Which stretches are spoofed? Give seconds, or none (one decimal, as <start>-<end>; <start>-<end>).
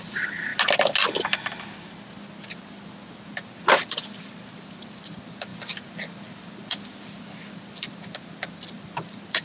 0.0-0.5; 3.9-5.5; 7.5-9.4